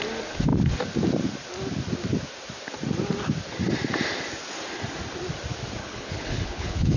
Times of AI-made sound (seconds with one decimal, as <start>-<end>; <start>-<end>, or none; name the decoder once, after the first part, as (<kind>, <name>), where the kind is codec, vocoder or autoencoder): 5.8-7.0 (codec, HILCodec)